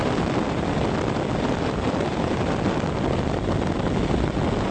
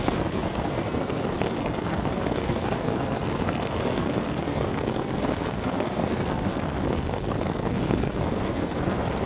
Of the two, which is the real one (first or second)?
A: first